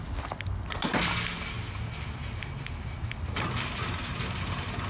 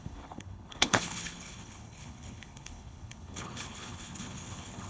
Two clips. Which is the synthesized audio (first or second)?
second